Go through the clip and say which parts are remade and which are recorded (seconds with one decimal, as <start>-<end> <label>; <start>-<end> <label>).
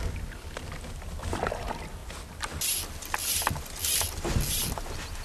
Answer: 0.0-5.2 recorded